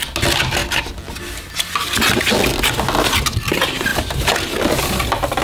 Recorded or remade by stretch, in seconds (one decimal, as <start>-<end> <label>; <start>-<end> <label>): 0.0-5.4 recorded